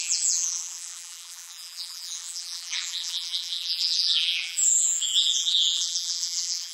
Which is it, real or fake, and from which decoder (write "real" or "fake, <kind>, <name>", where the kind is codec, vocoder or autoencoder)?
fake, vocoder, BigVGAN v2